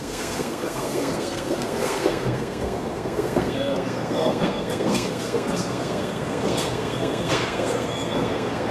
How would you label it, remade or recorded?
remade